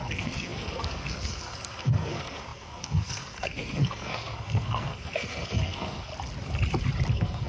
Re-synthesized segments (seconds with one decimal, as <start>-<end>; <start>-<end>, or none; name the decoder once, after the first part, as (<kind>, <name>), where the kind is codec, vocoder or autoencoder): 0.0-6.1 (codec, SNAC); 7.1-7.5